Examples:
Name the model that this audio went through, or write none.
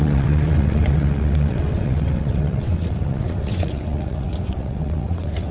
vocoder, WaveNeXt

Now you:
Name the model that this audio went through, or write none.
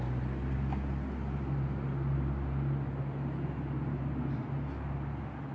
none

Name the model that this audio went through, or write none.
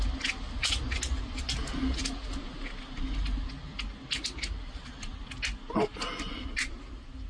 none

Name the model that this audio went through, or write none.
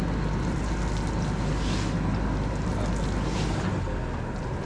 none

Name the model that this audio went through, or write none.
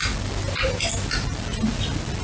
none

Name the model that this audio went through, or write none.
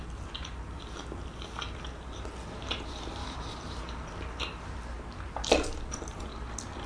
none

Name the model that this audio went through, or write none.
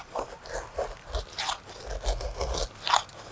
none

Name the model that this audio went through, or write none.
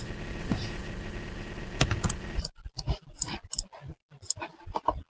none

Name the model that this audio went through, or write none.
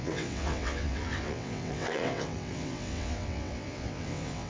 vocoder, WaveNeXt